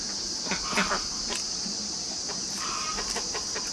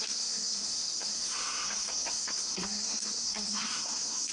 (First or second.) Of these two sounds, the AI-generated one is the second